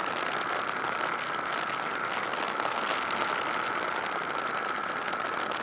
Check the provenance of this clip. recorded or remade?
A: recorded